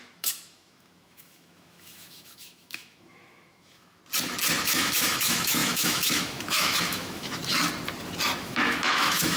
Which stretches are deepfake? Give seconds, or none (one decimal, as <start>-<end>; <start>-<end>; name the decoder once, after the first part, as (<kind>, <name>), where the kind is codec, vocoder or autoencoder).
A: 0.0-4.0 (autoencoder, DAC-VAE); 4.6-7.4; 8.4-9.4